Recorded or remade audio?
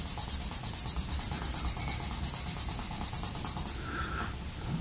recorded